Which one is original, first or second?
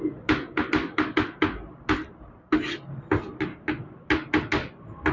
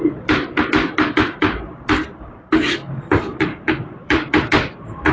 first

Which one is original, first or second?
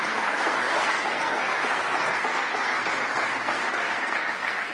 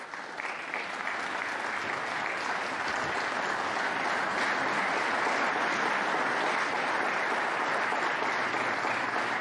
second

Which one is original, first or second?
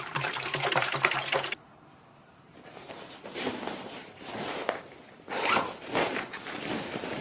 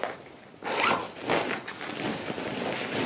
second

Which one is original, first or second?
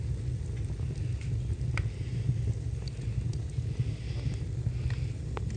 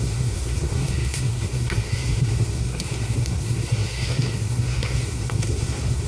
first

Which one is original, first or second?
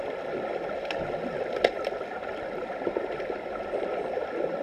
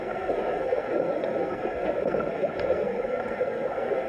first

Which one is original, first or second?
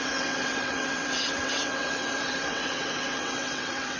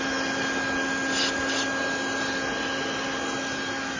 second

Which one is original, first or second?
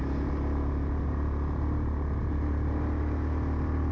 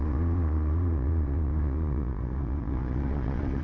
first